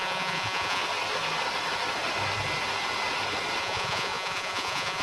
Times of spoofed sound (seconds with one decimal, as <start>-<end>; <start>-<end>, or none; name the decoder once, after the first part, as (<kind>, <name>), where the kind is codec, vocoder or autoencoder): 0.0-0.8 (vocoder, Vocos); 3.6-5.0